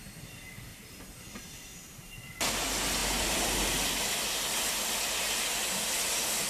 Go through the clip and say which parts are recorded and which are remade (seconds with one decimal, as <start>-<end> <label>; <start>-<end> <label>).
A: 0.0-0.7 recorded; 0.7-2.3 remade; 2.3-3.0 recorded; 3.0-4.1 remade; 4.1-6.5 recorded